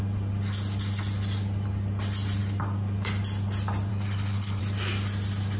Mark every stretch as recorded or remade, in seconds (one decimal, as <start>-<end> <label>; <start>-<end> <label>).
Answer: 0.0-3.9 recorded; 3.9-4.6 remade; 4.6-5.6 recorded